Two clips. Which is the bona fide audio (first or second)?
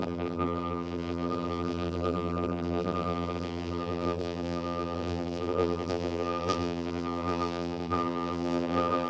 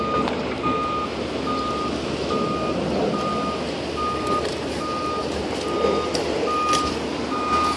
second